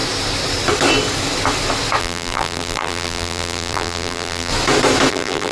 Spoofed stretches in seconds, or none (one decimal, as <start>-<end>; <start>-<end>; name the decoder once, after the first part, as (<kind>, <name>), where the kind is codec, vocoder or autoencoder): 2.0-4.5 (vocoder, BigVGAN v2); 5.1-5.5